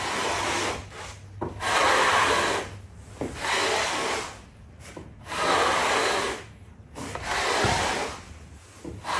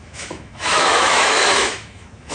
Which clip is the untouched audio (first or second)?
first